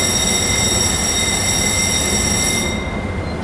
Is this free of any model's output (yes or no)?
yes